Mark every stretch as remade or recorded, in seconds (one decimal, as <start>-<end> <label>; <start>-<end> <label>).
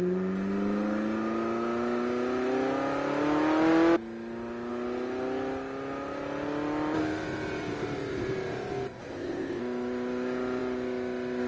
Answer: 0.0-9.0 recorded; 9.0-9.6 remade; 9.6-11.5 recorded